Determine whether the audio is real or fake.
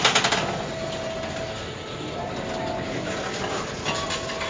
real